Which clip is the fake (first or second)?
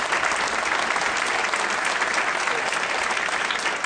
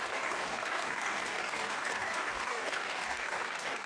second